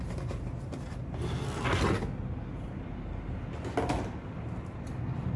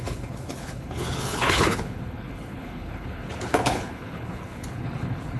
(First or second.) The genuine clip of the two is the first